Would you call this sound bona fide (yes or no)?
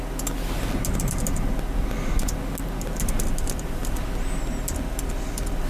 yes